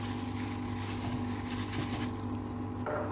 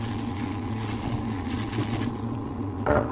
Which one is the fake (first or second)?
second